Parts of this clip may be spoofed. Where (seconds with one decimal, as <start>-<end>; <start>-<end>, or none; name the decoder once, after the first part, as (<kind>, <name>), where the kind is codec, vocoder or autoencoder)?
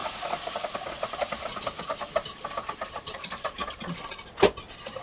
3.0-3.6 (vocoder, BigVGAN v2)